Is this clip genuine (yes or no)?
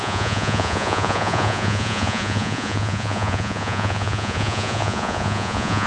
no